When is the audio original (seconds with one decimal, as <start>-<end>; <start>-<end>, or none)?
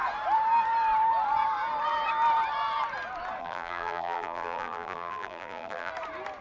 0.0-3.4; 5.9-6.4